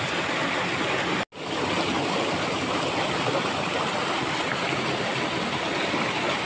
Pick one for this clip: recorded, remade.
recorded